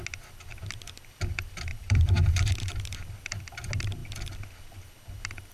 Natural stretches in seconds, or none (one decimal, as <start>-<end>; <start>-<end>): 0.0-1.7; 2.5-5.5